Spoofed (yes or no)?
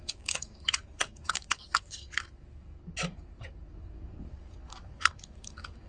yes